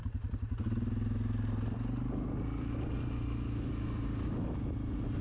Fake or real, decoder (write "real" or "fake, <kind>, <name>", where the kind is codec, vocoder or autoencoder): real